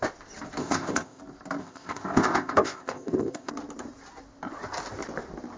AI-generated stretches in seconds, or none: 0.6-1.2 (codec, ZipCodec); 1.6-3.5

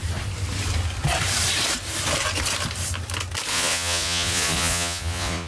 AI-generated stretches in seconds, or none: 3.5-5.5 (vocoder, Vocos)

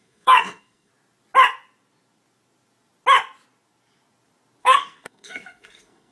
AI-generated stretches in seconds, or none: 0.0-0.9 (codec, SNAC); 4.6-6.1

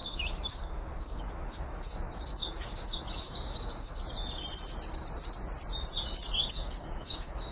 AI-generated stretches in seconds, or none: 0.0-4.0 (autoencoder, DAC-VAE); 6.5-7.5

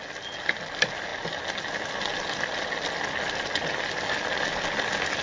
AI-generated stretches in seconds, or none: none

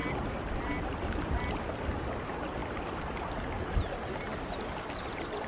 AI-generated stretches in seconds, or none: none